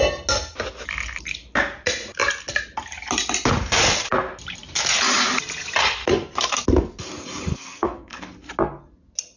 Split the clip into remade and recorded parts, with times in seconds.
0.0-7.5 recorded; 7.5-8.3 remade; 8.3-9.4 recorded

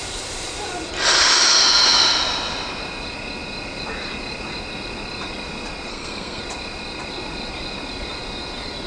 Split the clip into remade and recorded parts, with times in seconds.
0.0-5.9 recorded; 5.9-6.4 remade; 6.4-8.9 recorded

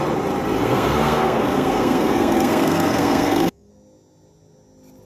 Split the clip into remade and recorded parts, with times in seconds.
0.0-0.6 recorded; 0.6-3.7 remade; 3.7-5.1 recorded

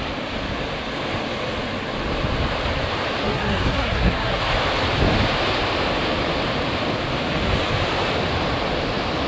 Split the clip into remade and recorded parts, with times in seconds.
0.0-3.2 recorded; 3.2-4.4 remade; 4.4-9.3 recorded

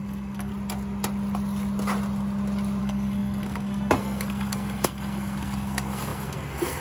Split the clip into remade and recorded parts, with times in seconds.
0.0-0.5 remade; 0.5-2.8 recorded; 2.8-6.8 remade

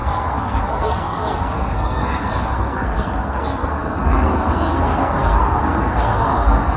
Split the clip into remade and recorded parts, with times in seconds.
0.0-6.8 remade

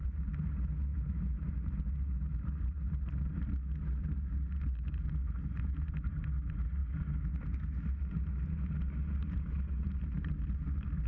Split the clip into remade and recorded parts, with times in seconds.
0.0-11.1 recorded